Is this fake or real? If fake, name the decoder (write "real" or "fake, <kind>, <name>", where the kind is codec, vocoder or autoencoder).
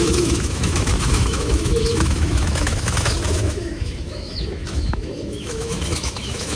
fake, autoencoder, DAC-VAE